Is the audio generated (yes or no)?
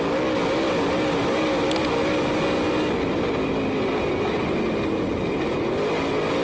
no